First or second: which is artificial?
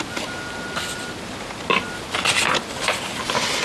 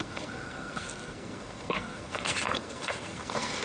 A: second